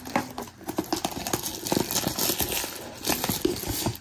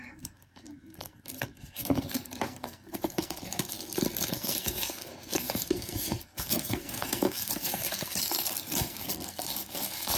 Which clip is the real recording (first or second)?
first